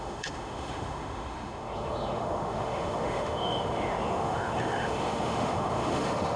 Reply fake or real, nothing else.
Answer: fake